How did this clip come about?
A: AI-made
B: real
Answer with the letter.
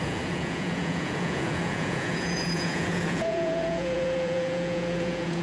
A